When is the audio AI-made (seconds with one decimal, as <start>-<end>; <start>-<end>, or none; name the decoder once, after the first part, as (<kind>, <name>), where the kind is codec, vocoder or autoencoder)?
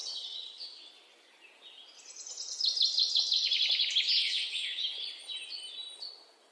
0.0-0.9 (vocoder, WaveNeXt); 4.2-4.8